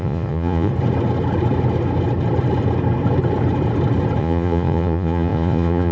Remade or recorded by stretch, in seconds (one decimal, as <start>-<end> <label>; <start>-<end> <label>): 0.0-0.7 remade; 0.7-4.2 recorded; 4.2-5.9 remade